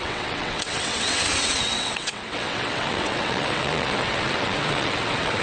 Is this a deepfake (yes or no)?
yes